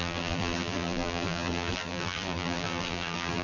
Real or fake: fake